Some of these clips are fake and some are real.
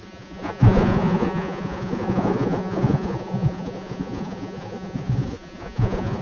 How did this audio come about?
fake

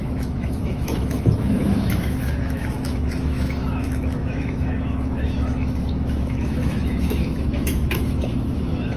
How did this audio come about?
fake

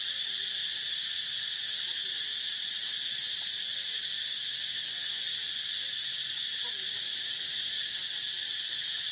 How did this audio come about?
real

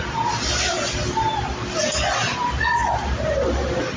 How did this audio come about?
real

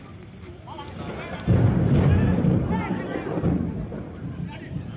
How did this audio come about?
real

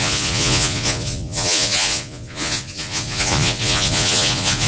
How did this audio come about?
fake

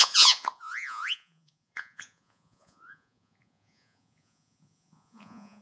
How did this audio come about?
fake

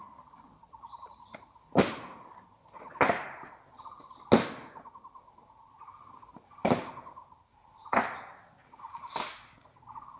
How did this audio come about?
real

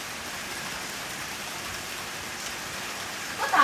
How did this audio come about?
real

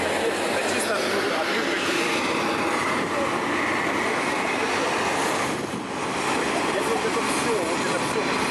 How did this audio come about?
real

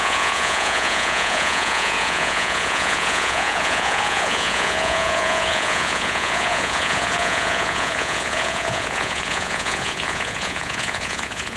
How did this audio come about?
fake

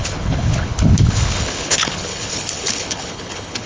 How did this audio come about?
fake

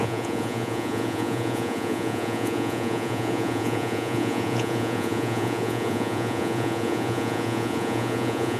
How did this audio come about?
fake